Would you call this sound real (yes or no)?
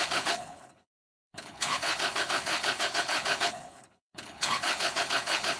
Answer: no